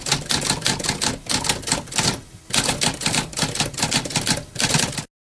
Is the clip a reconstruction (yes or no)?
no